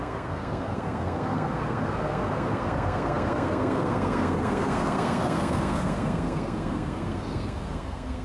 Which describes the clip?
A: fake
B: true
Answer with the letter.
A